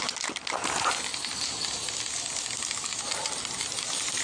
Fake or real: real